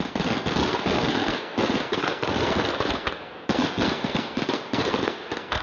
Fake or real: fake